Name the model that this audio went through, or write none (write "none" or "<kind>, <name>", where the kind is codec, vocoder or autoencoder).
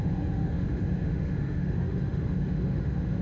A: autoencoder, DAC-VAE